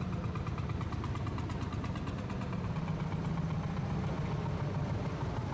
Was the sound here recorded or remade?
recorded